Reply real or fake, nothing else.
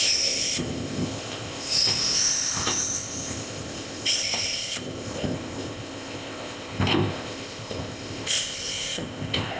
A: fake